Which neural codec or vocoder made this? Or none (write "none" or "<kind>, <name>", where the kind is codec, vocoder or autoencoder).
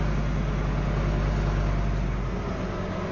none